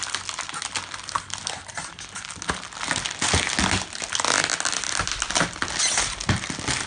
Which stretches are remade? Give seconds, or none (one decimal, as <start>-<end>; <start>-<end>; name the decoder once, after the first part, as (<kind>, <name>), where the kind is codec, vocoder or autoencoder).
none